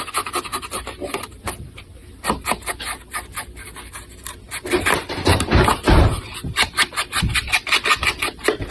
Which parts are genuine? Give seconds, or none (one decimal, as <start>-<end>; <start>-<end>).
0.0-0.5; 1.4-8.7